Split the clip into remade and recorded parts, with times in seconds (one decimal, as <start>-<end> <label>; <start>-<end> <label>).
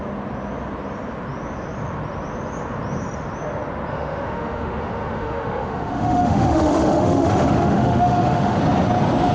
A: 0.0-3.9 recorded; 3.9-8.6 remade; 8.6-9.3 recorded